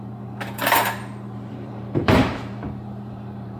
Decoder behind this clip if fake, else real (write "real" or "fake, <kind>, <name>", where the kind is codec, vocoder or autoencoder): fake, vocoder, BigVGAN v2